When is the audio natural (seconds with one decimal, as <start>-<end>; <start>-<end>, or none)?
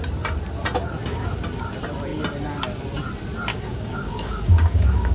0.0-3.5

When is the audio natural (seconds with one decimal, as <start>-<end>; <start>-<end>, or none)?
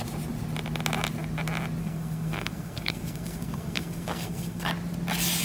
0.0-1.8; 4.7-5.4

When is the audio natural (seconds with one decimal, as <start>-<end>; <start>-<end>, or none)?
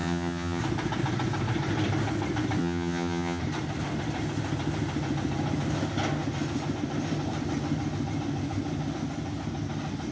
0.6-2.6; 3.4-10.1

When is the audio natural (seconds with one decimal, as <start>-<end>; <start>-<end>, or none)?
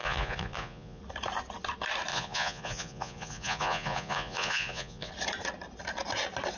1.0-2.1; 5.1-6.6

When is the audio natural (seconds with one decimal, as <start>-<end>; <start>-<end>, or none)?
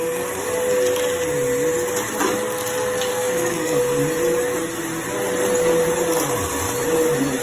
0.0-3.1; 3.8-7.4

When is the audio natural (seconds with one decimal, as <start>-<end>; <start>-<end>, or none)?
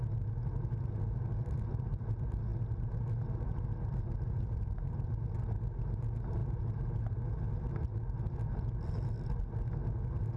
0.0-10.4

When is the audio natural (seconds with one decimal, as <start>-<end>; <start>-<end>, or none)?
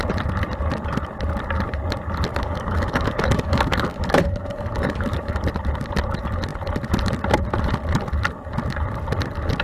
0.0-2.3; 5.4-9.6